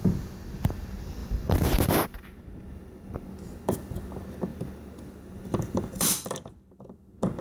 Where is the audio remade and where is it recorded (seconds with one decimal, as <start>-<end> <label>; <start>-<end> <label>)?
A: 0.0-1.2 recorded; 1.2-3.1 remade; 3.1-4.5 recorded; 4.5-6.8 remade; 6.8-7.4 recorded